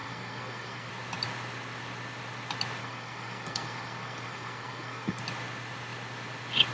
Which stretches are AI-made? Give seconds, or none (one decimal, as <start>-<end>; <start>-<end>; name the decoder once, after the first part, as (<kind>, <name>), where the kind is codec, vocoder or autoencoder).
0.0-0.9 (codec, SNAC); 2.8-5.2